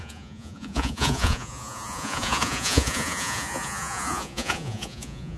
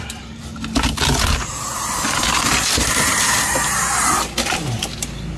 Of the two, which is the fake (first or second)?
first